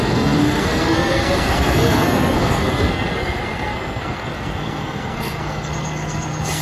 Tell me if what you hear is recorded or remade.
remade